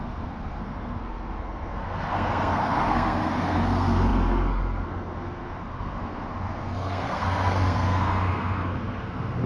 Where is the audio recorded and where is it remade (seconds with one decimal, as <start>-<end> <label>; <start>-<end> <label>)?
0.0-9.5 remade